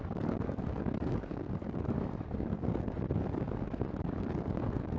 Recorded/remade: remade